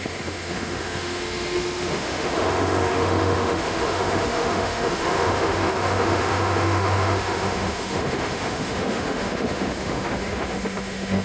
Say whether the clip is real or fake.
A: fake